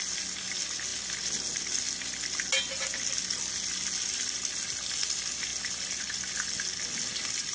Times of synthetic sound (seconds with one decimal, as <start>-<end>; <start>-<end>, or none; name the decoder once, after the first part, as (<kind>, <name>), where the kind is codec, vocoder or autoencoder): none